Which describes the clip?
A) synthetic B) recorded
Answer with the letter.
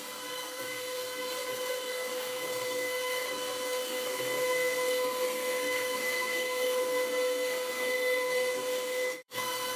A